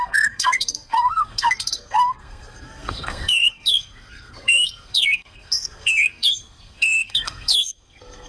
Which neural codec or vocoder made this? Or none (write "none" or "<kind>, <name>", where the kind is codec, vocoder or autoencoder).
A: codec, SNAC